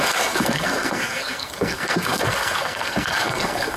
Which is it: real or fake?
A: fake